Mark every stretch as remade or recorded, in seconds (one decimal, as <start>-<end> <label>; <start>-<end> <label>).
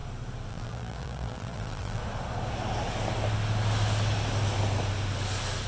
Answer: 0.0-0.5 recorded; 0.5-2.0 remade; 2.0-5.7 recorded